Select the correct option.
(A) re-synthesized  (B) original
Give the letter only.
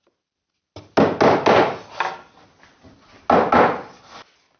B